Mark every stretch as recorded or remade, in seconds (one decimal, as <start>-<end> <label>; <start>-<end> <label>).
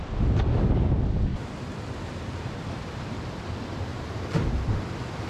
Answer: 0.0-1.3 recorded; 1.3-3.6 remade; 3.6-5.3 recorded